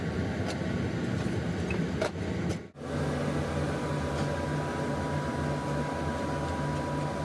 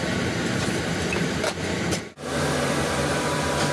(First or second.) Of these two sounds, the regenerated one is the second